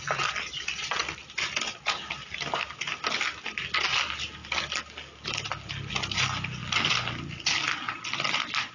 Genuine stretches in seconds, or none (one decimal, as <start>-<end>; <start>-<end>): 0.0-8.7